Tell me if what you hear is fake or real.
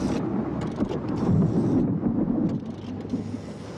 real